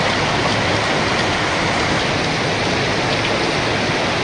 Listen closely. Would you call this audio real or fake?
real